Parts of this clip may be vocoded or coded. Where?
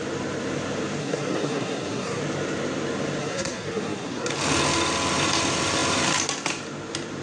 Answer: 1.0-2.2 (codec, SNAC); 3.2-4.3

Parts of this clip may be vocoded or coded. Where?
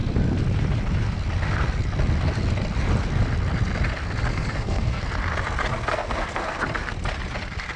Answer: 4.3-5.0 (codec, SNAC); 5.7-6.6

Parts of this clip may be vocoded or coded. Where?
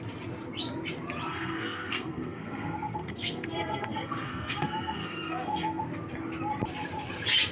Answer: 1.3-5.8 (codec, SNAC)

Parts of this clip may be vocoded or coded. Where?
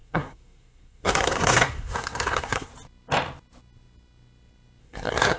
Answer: 0.0-2.7 (codec, SNAC); 4.8-5.4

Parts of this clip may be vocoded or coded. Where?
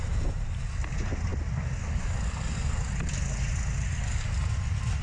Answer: none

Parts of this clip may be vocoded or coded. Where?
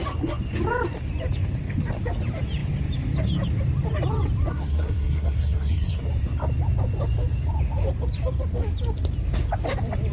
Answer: 4.5-6.0 (codec, SNAC)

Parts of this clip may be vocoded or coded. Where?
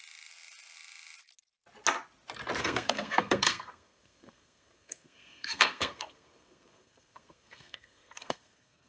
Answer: 2.6-8.9 (codec, SNAC)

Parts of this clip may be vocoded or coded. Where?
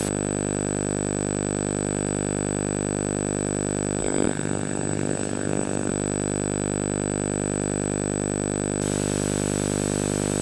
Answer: 4.0-5.9 (codec, SNAC)